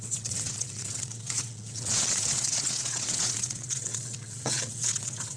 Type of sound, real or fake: fake